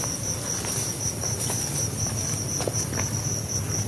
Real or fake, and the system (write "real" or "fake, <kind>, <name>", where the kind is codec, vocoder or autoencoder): real